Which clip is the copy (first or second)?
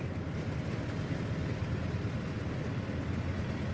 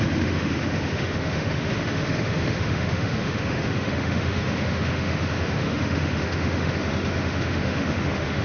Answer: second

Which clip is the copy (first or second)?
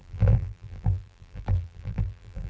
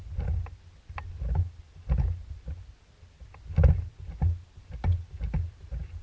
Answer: first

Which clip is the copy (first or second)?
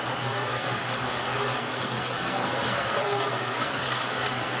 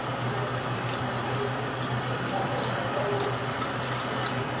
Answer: first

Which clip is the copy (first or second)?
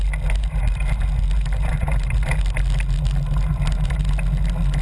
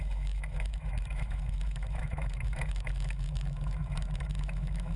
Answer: second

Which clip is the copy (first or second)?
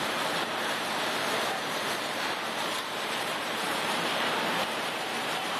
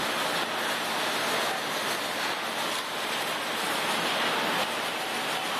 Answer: first